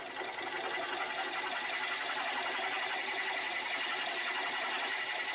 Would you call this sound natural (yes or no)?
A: yes